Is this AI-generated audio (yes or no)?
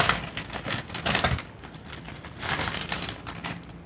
no